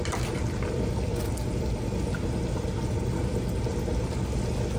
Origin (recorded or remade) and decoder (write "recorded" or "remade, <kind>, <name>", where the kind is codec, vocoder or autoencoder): recorded